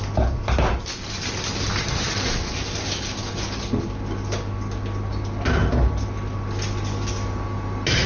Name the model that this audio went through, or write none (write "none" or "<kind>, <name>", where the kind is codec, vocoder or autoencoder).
none